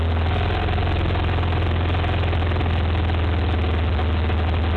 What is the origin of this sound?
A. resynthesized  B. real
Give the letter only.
B